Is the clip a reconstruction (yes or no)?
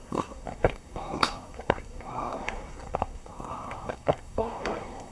yes